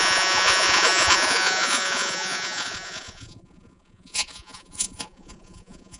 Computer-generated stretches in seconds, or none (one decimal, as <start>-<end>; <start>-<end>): 0.0-6.0